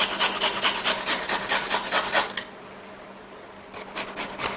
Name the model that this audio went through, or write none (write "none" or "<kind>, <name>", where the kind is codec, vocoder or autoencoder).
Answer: none